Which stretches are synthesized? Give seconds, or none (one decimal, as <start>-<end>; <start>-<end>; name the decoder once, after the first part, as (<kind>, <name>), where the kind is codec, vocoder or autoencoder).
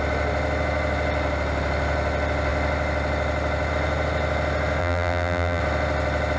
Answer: 4.8-5.6 (vocoder, BigVGAN v2)